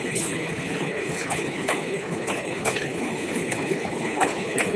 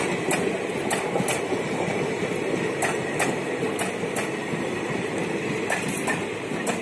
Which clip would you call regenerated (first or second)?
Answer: first